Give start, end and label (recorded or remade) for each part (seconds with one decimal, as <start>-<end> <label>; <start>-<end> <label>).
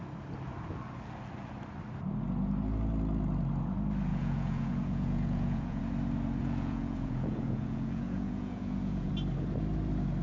0.0-4.1 recorded; 4.1-5.8 remade; 5.8-6.4 recorded; 6.4-9.1 remade; 9.1-10.2 recorded